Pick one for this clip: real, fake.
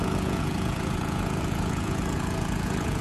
fake